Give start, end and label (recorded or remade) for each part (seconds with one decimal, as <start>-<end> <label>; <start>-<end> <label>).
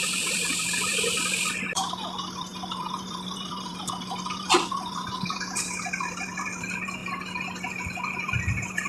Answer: 0.0-7.0 remade; 7.0-7.7 recorded; 7.7-8.9 remade